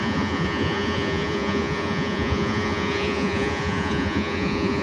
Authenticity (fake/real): fake